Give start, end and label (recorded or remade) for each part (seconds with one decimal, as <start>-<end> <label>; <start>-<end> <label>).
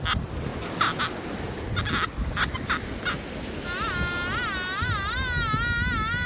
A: 0.0-6.3 recorded